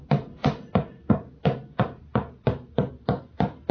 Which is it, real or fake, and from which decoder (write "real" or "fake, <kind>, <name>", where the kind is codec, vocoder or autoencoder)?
real